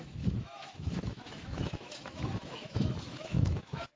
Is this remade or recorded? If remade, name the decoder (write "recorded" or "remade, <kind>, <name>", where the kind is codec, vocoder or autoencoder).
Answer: remade, autoencoder, DAC-VAE